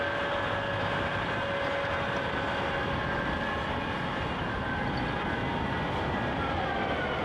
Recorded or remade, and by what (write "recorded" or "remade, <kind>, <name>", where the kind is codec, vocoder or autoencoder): recorded